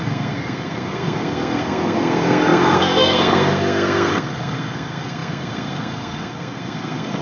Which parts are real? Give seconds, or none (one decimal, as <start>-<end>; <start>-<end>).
none